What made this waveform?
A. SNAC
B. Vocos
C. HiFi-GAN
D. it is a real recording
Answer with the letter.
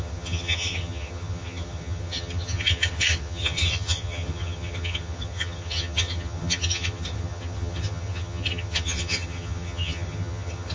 C